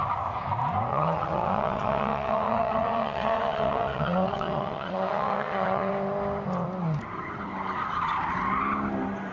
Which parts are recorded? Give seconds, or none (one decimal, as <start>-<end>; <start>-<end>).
0.0-0.9; 5.9-9.3